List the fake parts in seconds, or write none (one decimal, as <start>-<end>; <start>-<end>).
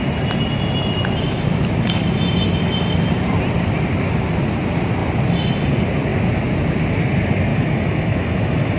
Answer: 7.5-8.8